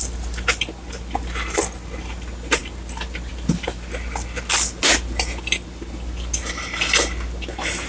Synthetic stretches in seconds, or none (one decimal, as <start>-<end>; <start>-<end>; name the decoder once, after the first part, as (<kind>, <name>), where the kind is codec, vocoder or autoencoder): none